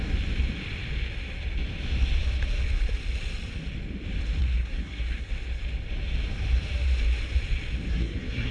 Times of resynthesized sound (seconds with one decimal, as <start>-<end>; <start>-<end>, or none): 4.4-5.3; 7.9-8.5